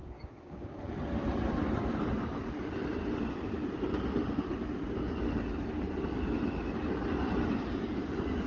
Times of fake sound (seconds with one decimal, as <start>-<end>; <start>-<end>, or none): 0.0-0.8